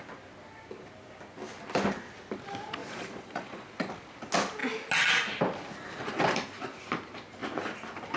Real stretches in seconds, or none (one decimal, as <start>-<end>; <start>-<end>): 0.0-2.8; 3.9-8.2